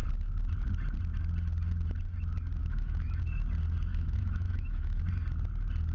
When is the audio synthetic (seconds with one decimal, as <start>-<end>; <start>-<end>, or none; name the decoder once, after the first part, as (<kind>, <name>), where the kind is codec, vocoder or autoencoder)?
2.6-3.2 (autoencoder, DAC-VAE); 3.9-5.0